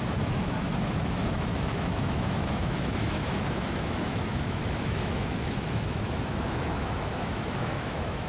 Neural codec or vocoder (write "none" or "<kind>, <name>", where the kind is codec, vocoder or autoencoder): autoencoder, DAC-VAE